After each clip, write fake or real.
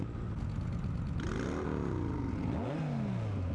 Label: real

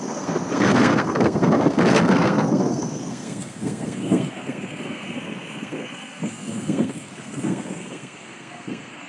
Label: fake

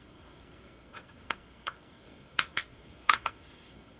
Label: fake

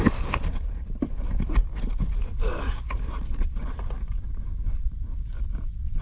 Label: real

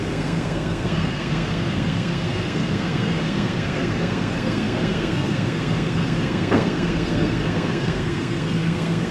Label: fake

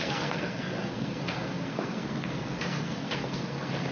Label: fake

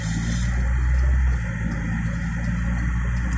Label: real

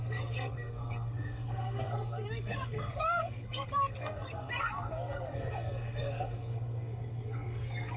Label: fake